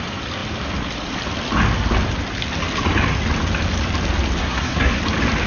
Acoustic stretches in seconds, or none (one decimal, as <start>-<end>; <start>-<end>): 0.0-4.4; 5.0-5.5